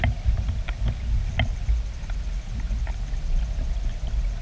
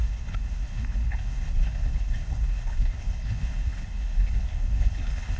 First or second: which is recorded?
first